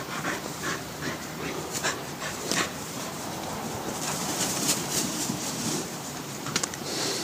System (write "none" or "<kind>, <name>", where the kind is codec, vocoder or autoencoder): vocoder, BigVGAN v2